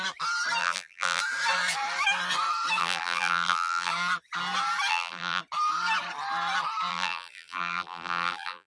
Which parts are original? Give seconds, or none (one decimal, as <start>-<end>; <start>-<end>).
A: 0.0-0.6; 1.2-2.8; 3.9-4.9; 5.4-6.9